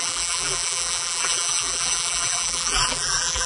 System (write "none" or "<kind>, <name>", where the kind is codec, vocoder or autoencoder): vocoder, BigVGAN v2